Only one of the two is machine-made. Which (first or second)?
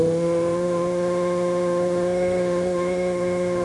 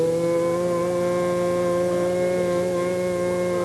first